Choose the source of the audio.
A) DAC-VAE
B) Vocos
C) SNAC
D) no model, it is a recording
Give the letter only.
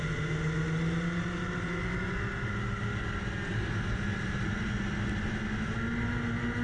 D